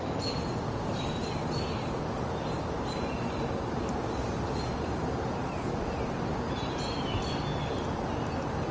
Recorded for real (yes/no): yes